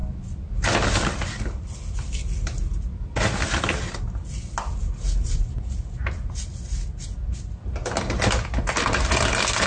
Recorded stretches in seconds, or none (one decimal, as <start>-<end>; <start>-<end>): 0.0-9.7